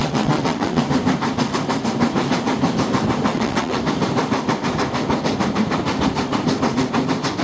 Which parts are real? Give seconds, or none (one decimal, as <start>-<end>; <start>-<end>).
0.8-3.3; 3.8-7.4